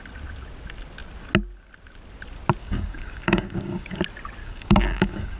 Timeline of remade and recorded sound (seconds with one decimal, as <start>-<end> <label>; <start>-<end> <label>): 0.0-2.6 recorded; 2.6-4.0 remade; 4.0-4.4 recorded; 4.4-5.4 remade